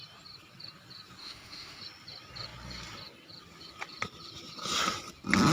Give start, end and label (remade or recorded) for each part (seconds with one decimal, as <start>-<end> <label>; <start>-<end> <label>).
0.0-1.2 recorded; 1.2-1.8 remade; 1.8-5.5 recorded